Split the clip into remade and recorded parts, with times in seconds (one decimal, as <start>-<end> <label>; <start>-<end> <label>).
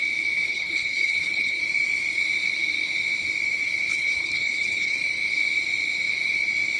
0.0-0.5 recorded; 0.5-1.6 remade; 1.6-3.9 recorded; 3.9-5.0 remade; 5.0-6.8 recorded